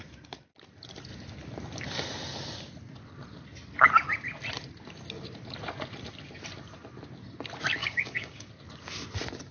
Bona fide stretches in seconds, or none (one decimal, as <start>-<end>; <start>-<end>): 0.0-7.8; 8.5-9.5